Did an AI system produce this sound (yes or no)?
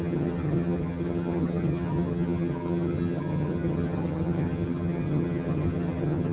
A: yes